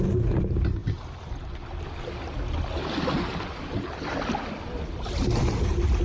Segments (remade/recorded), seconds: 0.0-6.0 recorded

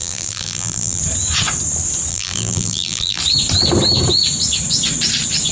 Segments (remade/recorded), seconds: 0.0-1.0 remade; 1.0-2.1 recorded; 2.1-3.2 remade; 3.2-5.5 recorded

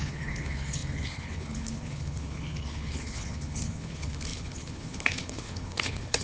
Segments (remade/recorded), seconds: 0.0-6.2 remade

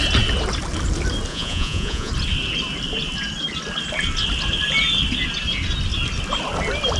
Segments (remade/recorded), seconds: 0.0-1.3 recorded; 1.3-2.1 remade; 2.1-7.0 recorded

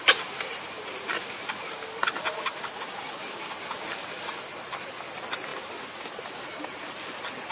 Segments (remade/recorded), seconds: 0.0-7.5 recorded

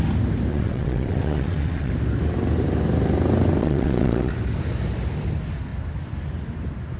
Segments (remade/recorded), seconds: 0.0-0.5 recorded; 0.5-1.9 remade; 1.9-3.6 recorded; 3.6-4.3 remade; 4.3-7.0 recorded

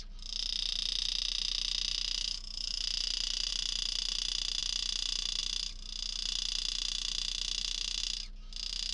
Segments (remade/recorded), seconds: 0.0-2.2 recorded; 2.2-2.8 remade; 2.8-8.9 recorded